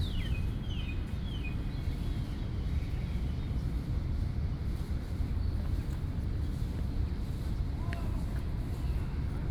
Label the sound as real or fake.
real